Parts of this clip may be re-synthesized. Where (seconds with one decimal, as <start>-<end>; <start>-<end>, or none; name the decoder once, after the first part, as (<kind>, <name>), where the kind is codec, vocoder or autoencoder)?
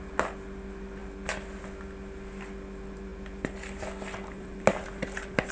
none